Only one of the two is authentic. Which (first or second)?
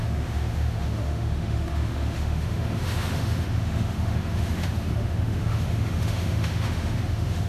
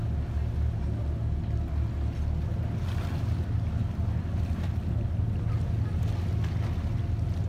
second